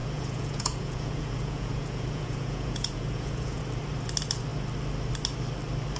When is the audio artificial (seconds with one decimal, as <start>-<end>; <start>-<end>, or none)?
0.0-3.6